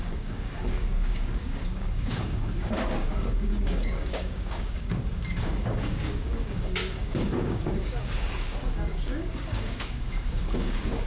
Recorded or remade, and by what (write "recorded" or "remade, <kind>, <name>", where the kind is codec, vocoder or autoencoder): remade, codec, DAC